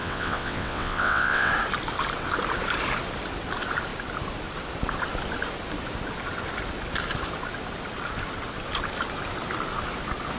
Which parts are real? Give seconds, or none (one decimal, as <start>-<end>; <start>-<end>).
1.5-10.4